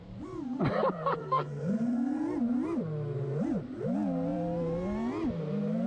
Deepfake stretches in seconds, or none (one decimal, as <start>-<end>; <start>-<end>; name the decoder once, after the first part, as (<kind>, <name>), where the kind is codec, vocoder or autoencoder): 1.2-2.2 (codec, SNAC)